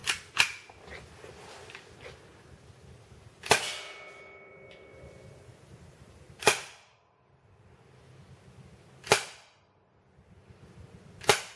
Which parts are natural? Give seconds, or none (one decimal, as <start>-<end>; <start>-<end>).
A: 0.0-4.9; 6.4-11.6